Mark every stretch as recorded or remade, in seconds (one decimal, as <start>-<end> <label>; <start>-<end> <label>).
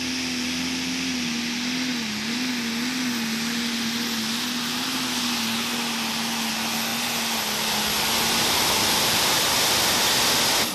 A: 0.0-10.7 recorded